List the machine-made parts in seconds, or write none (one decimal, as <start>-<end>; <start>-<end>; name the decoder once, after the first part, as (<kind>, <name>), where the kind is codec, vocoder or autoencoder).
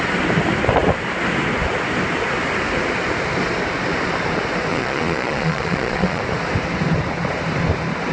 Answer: 4.7-6.2 (vocoder, Vocos)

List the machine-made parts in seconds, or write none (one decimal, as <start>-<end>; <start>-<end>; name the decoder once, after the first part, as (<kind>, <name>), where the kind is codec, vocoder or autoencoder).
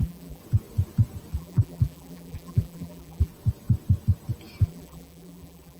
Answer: 0.0-0.4 (vocoder, BigVGAN v2); 1.3-3.3; 4.6-5.8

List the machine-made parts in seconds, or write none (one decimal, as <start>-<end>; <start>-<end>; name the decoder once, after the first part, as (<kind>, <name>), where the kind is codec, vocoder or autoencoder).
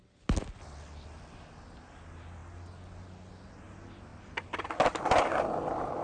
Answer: none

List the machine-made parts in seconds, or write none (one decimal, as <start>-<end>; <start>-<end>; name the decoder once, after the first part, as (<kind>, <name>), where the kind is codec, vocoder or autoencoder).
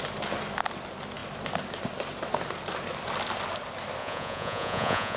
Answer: 4.0-5.2 (vocoder, Vocos)